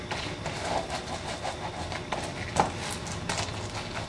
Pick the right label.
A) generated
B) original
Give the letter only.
B